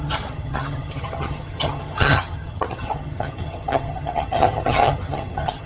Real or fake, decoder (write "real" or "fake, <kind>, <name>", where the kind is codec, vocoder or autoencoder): fake, vocoder, HiFi-GAN